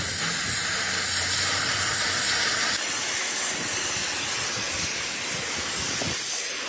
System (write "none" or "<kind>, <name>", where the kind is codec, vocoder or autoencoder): none